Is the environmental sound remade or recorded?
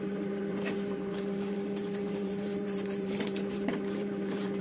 remade